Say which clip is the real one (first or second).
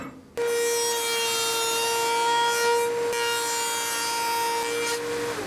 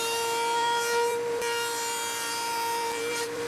first